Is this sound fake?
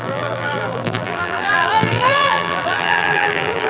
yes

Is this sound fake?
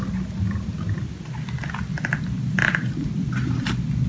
no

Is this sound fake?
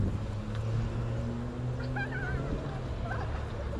no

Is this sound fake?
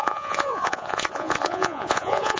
yes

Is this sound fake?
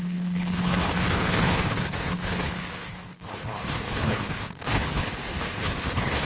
yes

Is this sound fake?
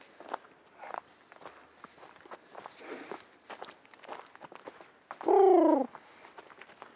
no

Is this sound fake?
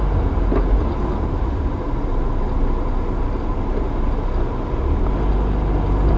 no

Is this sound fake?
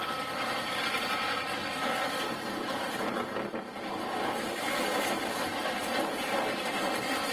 no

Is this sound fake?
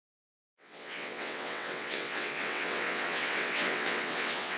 yes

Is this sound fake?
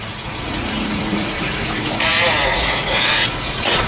yes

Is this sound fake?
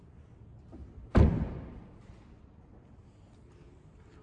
no